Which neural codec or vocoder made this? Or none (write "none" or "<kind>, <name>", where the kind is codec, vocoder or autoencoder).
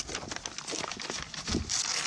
none